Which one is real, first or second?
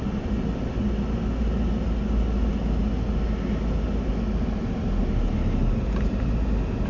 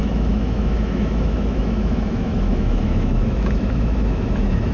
first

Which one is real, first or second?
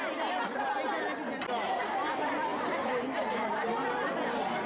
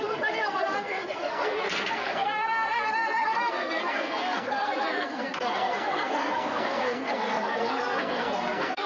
first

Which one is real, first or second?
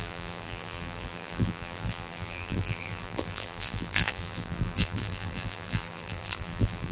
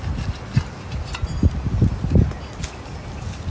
second